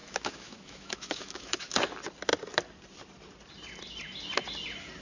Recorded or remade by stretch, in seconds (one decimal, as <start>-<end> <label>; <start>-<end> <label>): 0.0-1.7 remade; 1.7-5.0 recorded